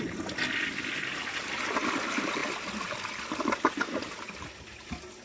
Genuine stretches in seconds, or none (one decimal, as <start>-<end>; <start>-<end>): 0.0-5.2